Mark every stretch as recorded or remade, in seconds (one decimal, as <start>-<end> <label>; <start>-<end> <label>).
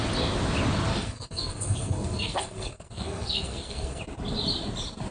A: 0.0-0.9 recorded; 0.9-4.0 remade; 4.0-5.1 recorded